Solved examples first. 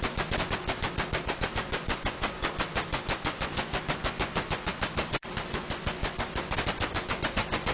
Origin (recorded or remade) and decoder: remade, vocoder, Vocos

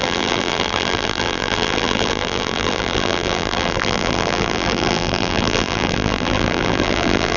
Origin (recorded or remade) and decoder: remade, vocoder, BigVGAN v2